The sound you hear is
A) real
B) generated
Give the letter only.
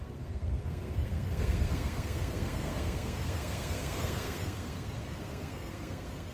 B